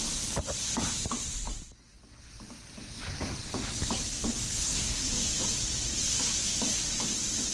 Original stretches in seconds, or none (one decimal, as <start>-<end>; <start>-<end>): 0.0-4.6; 5.1-7.5